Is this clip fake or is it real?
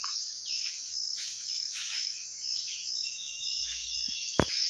fake